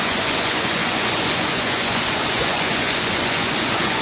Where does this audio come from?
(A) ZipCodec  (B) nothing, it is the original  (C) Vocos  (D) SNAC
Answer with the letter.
C